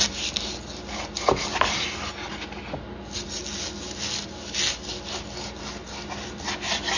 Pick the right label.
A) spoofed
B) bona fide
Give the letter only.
B